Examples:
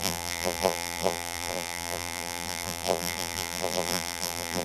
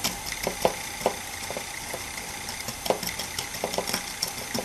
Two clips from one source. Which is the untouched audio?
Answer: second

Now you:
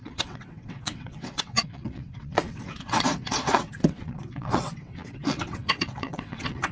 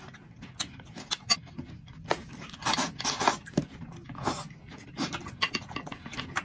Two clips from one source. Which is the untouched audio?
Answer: second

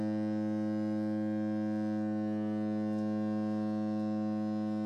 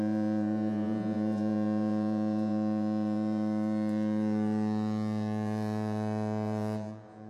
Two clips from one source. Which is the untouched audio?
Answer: first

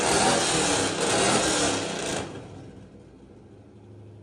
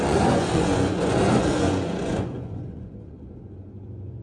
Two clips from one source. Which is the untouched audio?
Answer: first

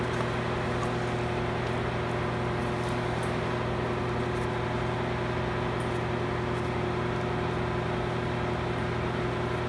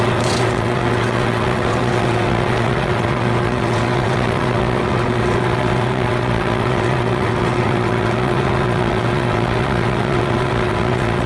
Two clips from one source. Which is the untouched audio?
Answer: first